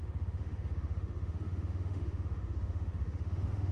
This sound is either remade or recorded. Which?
remade